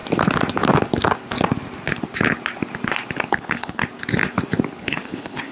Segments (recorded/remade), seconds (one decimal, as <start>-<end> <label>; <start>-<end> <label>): 0.0-3.3 recorded; 3.3-3.8 remade; 3.8-4.8 recorded; 4.8-5.5 remade